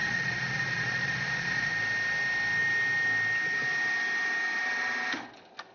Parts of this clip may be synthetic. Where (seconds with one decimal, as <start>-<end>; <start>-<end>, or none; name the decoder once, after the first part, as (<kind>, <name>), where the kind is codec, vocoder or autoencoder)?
0.0-1.7 (vocoder, Vocos)